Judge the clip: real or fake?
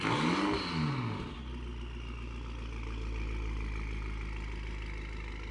real